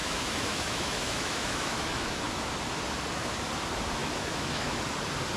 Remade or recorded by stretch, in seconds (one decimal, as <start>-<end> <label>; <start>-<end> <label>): 0.0-2.5 remade; 2.5-4.0 recorded; 4.0-4.8 remade; 4.8-5.4 recorded